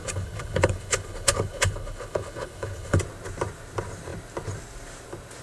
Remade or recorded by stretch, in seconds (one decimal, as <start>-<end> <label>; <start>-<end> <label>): 0.0-3.0 remade; 3.0-5.4 recorded